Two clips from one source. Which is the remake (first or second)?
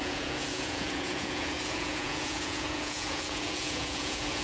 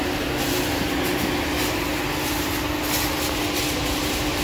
first